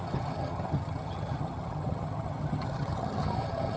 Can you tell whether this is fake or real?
fake